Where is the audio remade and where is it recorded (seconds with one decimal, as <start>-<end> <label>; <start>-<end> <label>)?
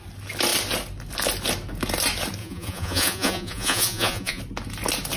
0.0-2.4 recorded; 2.4-4.4 remade; 4.4-5.2 recorded